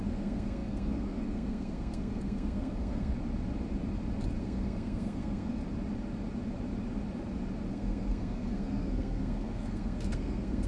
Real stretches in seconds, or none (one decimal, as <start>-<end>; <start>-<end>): 3.1-4.4; 5.6-7.7